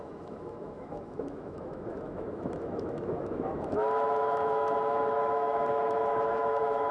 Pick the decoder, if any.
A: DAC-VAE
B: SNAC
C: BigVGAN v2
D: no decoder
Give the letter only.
A